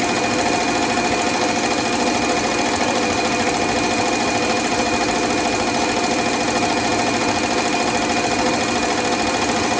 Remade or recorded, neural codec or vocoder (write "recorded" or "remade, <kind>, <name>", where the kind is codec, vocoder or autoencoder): recorded